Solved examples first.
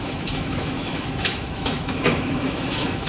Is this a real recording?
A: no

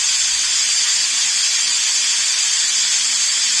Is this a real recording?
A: yes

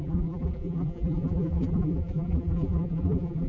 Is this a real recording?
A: no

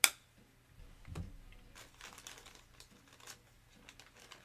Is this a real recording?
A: yes